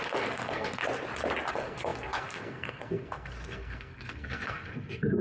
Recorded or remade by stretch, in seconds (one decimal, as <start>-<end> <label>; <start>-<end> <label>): 0.0-0.8 remade; 0.8-1.5 recorded; 1.5-5.2 remade

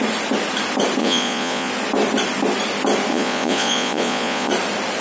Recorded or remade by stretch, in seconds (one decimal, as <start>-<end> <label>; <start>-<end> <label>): 0.0-1.0 recorded; 1.0-1.7 remade; 1.7-3.1 recorded; 3.1-4.5 remade; 4.5-5.0 recorded

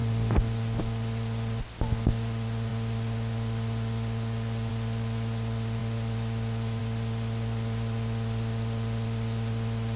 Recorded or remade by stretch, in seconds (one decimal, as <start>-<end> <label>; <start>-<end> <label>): 0.0-10.0 recorded

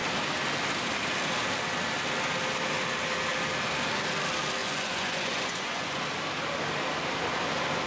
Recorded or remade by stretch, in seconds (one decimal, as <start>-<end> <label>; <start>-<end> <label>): 0.0-4.6 recorded; 4.6-6.0 remade; 6.0-7.9 recorded

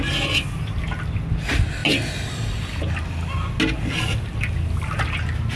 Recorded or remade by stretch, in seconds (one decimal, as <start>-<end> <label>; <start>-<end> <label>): 0.0-5.6 recorded

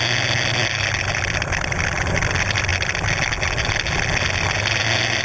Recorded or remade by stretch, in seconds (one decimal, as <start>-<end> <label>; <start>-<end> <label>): 0.0-5.2 recorded